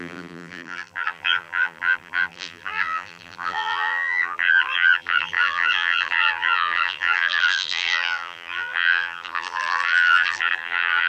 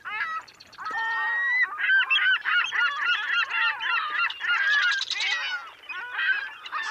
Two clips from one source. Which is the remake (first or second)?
first